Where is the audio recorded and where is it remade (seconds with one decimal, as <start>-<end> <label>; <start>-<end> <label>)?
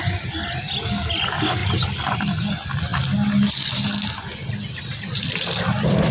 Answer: 0.0-2.9 recorded; 2.9-3.7 remade; 3.7-4.4 recorded; 4.4-6.1 remade